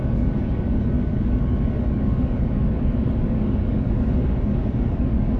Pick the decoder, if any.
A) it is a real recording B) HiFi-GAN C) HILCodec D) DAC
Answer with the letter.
D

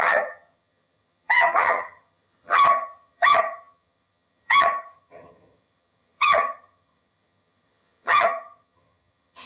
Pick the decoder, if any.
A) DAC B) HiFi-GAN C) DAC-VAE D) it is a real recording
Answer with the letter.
B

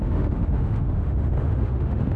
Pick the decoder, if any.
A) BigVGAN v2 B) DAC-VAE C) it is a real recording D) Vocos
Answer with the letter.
B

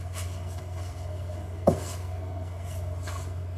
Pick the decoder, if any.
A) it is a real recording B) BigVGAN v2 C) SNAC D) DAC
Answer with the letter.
C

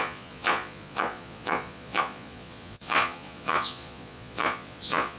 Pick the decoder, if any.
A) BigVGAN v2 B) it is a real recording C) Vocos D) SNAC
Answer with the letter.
C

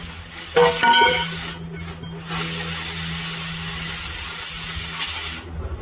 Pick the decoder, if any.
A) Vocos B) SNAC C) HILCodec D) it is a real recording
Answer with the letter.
D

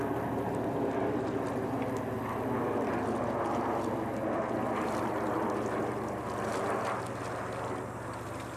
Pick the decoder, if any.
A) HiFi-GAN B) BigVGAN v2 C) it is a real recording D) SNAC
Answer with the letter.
C